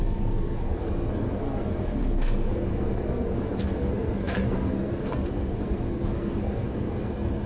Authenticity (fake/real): fake